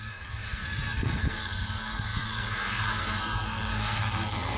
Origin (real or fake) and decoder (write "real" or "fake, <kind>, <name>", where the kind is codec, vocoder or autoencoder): fake, codec, SNAC